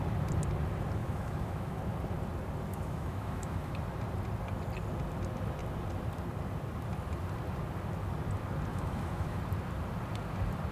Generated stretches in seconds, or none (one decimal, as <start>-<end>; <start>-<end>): 1.0-1.8; 2.7-3.7; 8.7-9.4